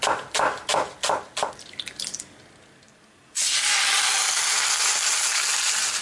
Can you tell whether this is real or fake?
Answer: real